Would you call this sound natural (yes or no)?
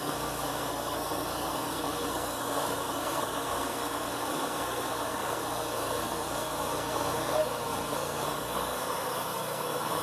no